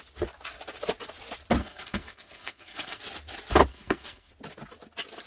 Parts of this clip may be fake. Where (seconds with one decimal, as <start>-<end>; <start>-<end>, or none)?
1.6-3.0; 3.7-4.3